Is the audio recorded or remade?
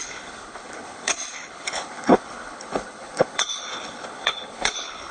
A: remade